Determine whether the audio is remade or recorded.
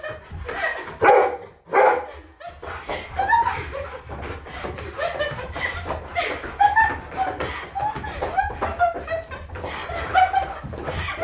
recorded